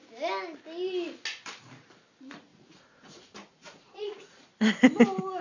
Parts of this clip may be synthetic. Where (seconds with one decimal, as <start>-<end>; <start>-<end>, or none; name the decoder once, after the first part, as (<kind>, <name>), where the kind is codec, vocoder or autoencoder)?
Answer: 2.5-4.4 (vocoder, Vocos)